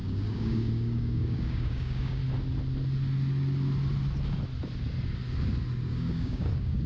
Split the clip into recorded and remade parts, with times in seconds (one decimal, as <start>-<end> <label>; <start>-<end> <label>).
0.0-2.2 remade; 2.2-5.9 recorded; 5.9-6.9 remade